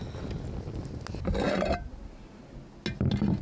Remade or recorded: recorded